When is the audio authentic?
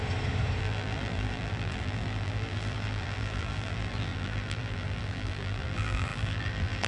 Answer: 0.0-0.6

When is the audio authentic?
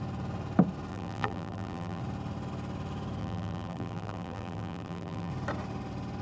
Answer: 0.0-0.9; 2.0-3.2; 5.3-6.2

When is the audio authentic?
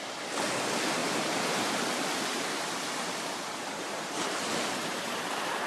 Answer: 0.0-1.0; 1.7-2.3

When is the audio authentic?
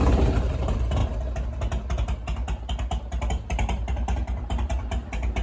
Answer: 1.0-3.3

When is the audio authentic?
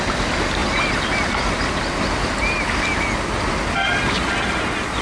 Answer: 0.0-5.0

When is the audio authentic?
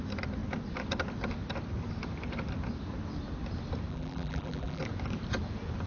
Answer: 0.0-3.9; 4.8-5.9